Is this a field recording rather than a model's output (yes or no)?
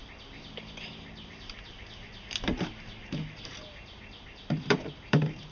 yes